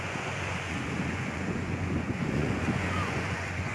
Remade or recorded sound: remade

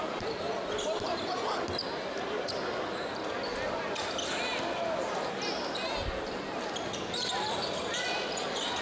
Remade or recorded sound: recorded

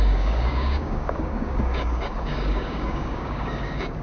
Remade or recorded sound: remade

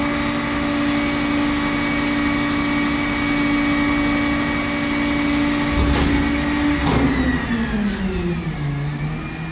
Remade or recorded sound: recorded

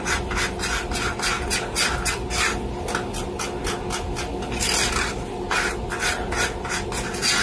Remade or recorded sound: recorded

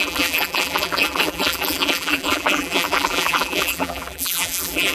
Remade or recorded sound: remade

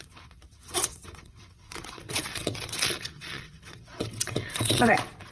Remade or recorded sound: remade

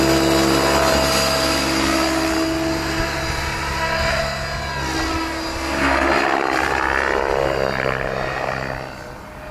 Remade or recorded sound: recorded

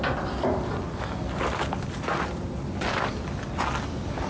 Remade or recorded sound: recorded